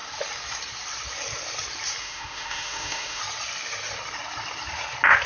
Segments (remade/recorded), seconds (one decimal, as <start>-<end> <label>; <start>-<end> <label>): 0.0-2.0 recorded; 2.0-3.2 remade; 3.2-5.3 recorded

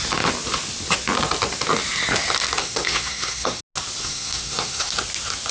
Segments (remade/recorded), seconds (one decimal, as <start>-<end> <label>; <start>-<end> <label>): 0.0-2.6 recorded; 2.6-3.6 remade; 3.6-4.0 recorded; 4.0-4.9 remade; 4.9-5.5 recorded

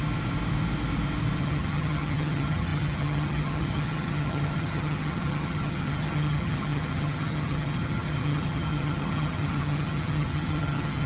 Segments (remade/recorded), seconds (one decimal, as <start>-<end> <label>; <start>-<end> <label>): 0.0-1.4 recorded; 1.4-11.1 remade